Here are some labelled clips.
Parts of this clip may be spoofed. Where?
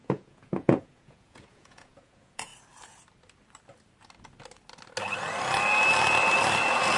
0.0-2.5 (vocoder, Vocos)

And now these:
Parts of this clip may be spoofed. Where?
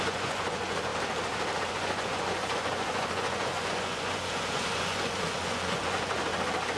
0.0-0.9 (vocoder, Vocos); 1.7-6.2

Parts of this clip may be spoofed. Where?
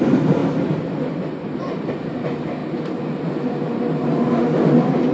none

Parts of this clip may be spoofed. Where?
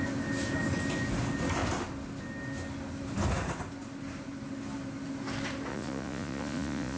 5.7-7.0 (vocoder, Vocos)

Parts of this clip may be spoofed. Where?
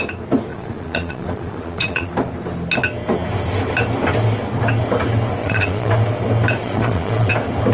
0.5-2.1 (vocoder, Vocos); 5.4-5.9; 6.6-7.3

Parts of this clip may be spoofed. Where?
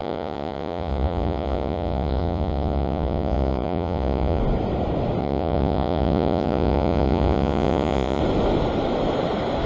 0.0-4.4 (vocoder, Vocos); 5.2-8.2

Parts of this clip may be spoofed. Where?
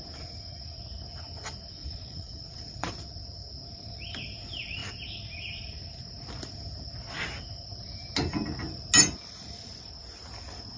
1.8-2.9 (vocoder, Vocos)